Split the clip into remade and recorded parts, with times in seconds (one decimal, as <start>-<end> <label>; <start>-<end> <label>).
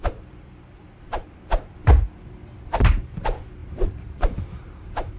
0.0-1.1 remade; 1.1-2.7 recorded; 2.7-5.2 remade